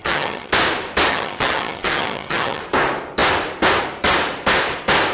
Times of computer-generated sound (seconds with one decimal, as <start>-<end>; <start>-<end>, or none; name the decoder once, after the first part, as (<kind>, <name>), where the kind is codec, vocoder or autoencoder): 0.0-0.5 (vocoder, HiFi-GAN); 1.1-2.6